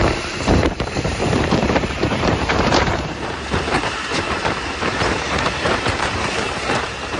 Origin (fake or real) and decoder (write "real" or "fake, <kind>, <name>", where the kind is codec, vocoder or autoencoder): fake, vocoder, BigVGAN v2